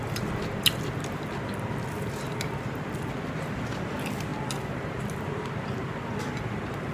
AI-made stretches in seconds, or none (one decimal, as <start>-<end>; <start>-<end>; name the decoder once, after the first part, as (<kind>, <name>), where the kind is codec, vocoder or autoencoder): none